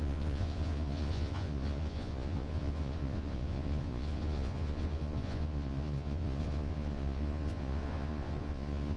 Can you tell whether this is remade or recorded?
remade